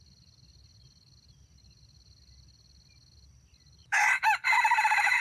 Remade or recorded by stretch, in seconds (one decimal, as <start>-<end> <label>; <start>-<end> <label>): 0.0-3.8 recorded; 3.8-5.2 remade